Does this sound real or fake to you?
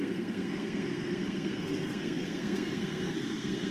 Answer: fake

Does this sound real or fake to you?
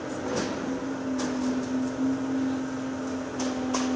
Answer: real